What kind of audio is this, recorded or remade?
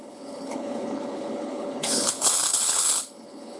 remade